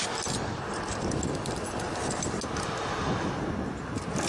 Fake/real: real